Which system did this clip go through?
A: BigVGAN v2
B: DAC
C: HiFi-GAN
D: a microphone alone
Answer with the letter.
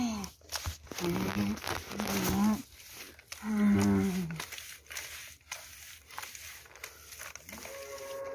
D